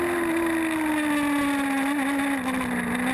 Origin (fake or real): real